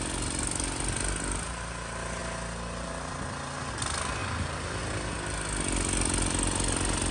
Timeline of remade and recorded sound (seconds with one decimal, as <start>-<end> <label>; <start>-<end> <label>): 0.0-7.1 recorded